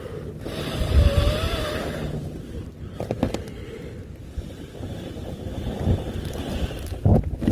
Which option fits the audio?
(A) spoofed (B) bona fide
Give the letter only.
B